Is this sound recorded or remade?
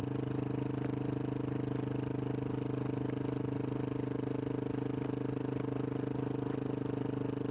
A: recorded